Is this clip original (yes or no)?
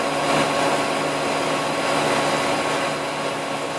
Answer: yes